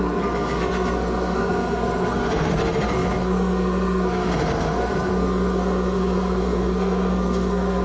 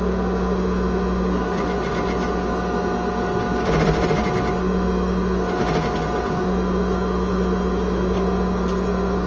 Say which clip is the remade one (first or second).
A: first